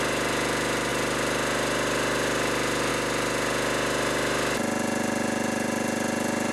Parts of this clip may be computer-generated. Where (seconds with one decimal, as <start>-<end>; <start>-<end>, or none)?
none